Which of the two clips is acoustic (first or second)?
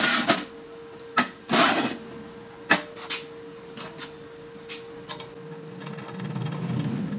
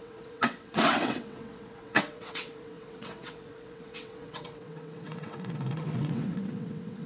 first